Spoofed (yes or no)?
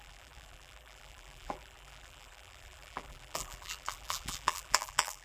yes